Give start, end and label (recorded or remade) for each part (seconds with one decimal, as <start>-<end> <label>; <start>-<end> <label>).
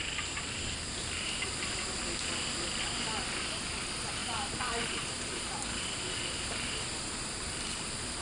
0.0-8.2 recorded